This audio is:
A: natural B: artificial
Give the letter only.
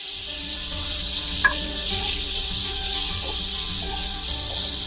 B